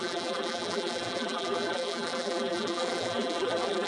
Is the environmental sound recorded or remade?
remade